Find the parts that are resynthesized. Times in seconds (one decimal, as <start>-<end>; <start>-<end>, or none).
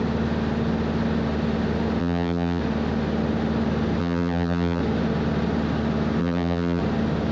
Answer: 2.0-2.6; 4.0-4.8; 6.2-6.8